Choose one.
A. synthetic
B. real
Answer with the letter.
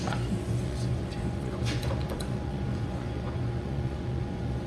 A